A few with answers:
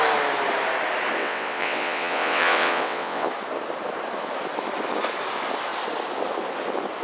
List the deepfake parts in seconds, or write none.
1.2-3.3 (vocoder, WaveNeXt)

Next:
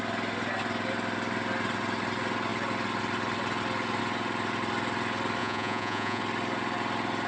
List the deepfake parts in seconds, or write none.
5.4-6.2 (vocoder, Vocos)

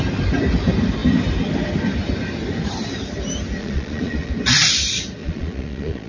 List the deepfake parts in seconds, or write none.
3.6-4.3 (vocoder, Vocos); 5.2-6.1

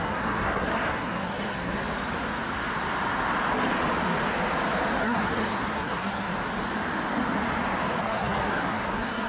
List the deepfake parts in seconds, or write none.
0.0-1.8 (codec, SNAC); 5.0-6.3; 8.0-9.3

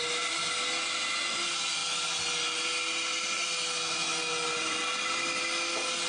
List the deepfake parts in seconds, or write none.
none